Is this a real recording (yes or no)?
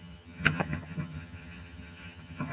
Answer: no